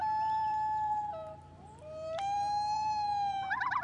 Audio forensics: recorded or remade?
remade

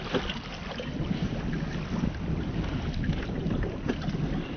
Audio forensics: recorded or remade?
recorded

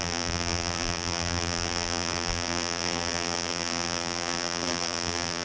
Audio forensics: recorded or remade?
remade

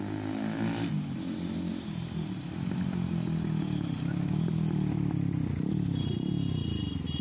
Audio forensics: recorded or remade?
recorded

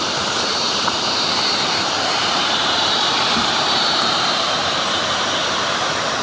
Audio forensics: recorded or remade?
remade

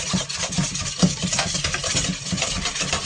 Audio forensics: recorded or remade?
recorded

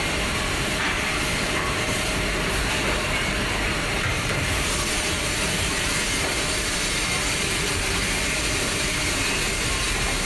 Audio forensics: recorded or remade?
remade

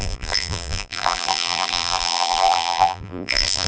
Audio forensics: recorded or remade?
remade